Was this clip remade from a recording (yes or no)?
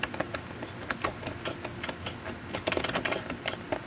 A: no